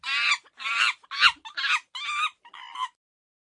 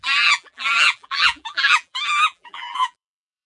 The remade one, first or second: second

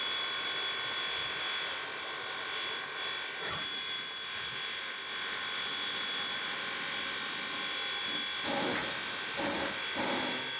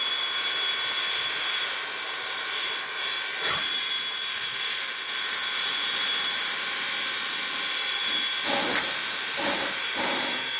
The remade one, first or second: second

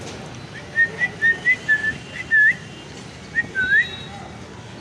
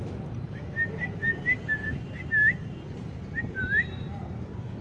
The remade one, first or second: second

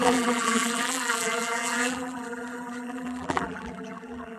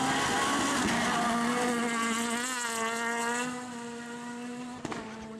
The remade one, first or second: first